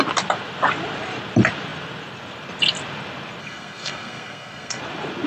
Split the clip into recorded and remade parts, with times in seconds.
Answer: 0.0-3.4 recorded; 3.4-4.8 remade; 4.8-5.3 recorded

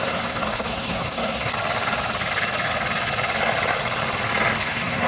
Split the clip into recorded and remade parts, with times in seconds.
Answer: 0.0-1.5 remade; 1.5-4.6 recorded; 4.6-5.1 remade

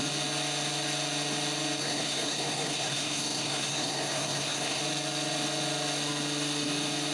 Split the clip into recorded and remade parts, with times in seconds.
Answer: 0.0-1.8 recorded; 1.8-4.8 remade; 4.8-7.1 recorded

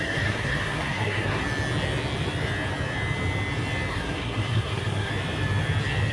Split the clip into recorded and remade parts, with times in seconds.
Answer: 0.0-1.4 remade; 1.4-3.9 recorded; 3.9-5.1 remade; 5.1-6.1 recorded

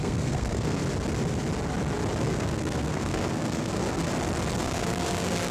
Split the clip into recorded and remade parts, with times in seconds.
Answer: 0.0-0.8 remade; 0.8-2.2 recorded; 2.2-4.1 remade; 4.1-4.6 recorded; 4.6-5.5 remade

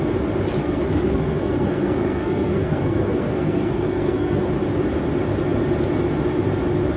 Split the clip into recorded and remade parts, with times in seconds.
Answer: 0.0-0.6 recorded; 0.6-4.5 remade; 4.5-7.0 recorded

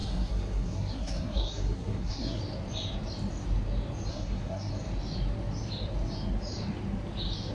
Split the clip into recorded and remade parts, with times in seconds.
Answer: 0.0-2.4 remade; 2.4-4.1 recorded; 4.1-4.7 remade; 4.7-7.5 recorded